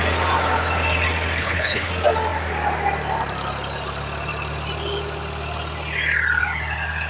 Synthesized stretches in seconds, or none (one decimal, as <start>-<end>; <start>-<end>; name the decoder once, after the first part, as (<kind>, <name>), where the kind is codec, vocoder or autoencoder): 1.4-1.9 (codec, HILCodec)